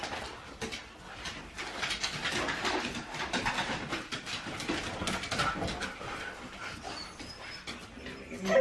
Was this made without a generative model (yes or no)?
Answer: yes